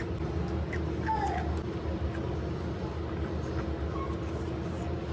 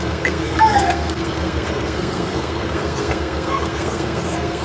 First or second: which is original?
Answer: first